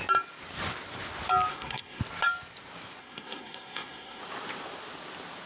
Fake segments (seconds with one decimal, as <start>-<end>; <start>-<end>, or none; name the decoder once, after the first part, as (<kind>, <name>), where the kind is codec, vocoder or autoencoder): 1.5-2.0 (codec, SNAC); 3.0-4.2